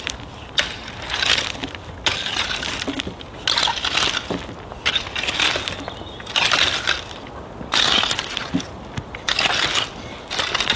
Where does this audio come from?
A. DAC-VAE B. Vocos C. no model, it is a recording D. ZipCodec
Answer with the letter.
C